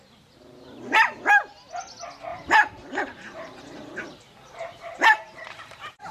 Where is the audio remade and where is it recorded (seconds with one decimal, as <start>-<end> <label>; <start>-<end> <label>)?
0.0-2.3 recorded; 2.3-6.1 remade